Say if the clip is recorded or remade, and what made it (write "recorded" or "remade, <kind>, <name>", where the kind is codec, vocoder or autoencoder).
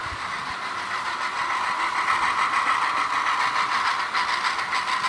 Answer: recorded